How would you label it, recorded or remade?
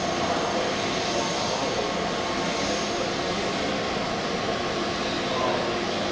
recorded